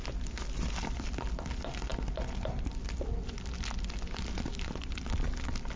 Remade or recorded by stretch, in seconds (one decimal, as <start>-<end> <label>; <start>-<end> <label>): 0.0-5.8 recorded